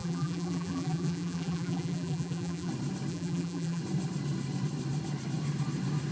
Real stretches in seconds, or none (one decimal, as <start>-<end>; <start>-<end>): 2.7-3.1; 3.8-6.1